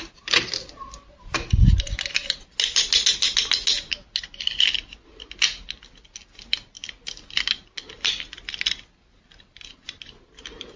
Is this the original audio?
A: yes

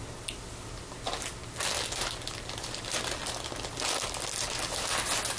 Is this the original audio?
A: yes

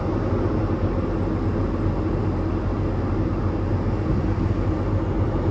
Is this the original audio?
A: yes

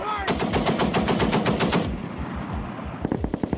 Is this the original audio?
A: yes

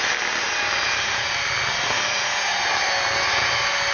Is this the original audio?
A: yes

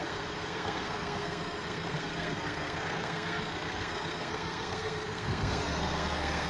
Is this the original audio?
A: no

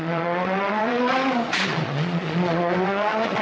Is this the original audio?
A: no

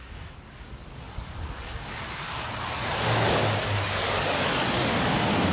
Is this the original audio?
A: no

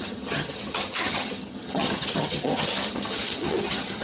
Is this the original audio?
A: no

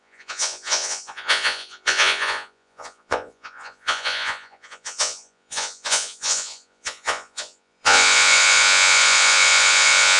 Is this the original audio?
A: no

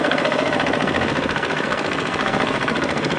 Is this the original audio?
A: no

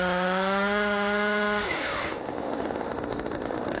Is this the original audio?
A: no